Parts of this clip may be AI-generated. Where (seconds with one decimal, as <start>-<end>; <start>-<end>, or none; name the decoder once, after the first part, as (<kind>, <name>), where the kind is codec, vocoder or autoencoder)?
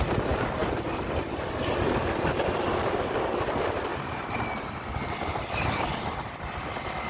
none